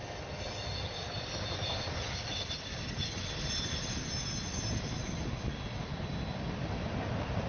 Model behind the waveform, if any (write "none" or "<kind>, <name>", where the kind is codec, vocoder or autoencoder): none